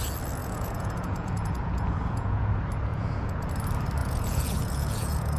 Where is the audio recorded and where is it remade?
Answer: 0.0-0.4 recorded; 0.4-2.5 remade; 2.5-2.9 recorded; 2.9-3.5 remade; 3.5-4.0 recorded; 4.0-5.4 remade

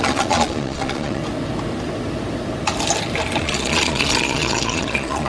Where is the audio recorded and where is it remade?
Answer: 0.0-1.2 remade; 1.2-3.4 recorded; 3.4-5.3 remade

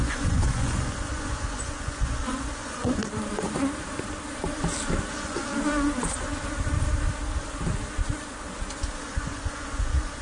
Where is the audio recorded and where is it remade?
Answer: 0.0-3.0 remade; 3.0-5.1 recorded; 5.1-5.5 remade; 5.5-9.0 recorded; 9.0-10.2 remade

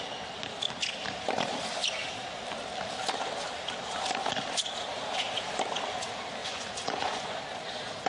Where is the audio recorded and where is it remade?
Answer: 0.0-6.4 recorded; 6.4-7.4 remade; 7.4-8.1 recorded

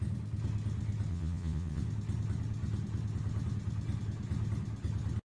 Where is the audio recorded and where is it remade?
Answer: 0.0-1.1 recorded; 1.1-1.8 remade; 1.8-5.2 recorded